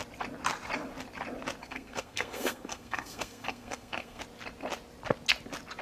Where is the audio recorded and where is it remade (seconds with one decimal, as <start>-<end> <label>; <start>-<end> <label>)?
0.0-1.6 recorded; 1.6-4.2 remade; 4.2-5.8 recorded